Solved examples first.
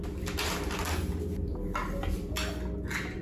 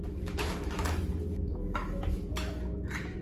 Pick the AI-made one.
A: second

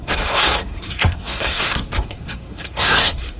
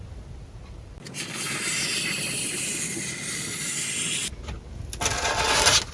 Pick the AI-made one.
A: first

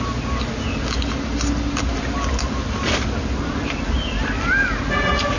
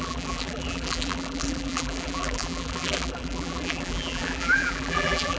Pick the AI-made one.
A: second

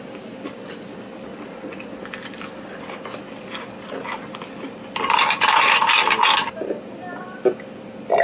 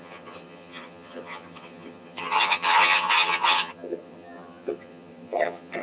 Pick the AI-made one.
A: second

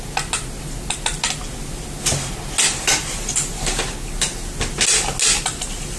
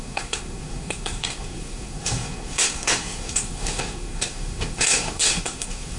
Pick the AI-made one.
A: second